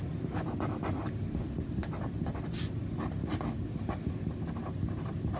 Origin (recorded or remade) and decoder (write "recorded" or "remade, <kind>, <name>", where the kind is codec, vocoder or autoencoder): recorded